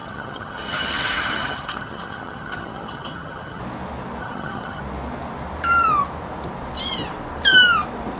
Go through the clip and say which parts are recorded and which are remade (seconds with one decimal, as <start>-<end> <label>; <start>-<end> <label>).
0.0-3.6 remade; 3.6-4.2 recorded; 4.2-4.8 remade; 4.8-8.2 recorded